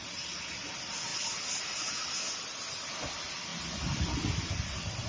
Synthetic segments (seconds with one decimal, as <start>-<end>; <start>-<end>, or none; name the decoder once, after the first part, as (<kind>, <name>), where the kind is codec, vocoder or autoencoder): none